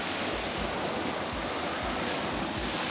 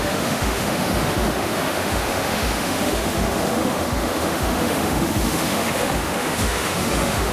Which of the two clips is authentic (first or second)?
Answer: first